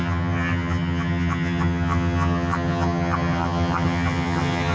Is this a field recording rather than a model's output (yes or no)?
no